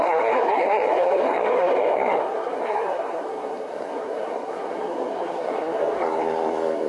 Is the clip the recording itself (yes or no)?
no